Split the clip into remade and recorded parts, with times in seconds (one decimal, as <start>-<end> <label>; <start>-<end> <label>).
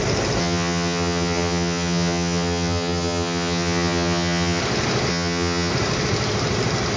0.0-0.4 recorded; 0.4-4.6 remade; 4.6-5.1 recorded; 5.1-5.7 remade; 5.7-7.0 recorded